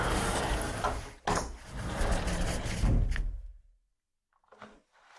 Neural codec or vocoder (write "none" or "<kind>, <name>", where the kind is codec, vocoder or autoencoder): none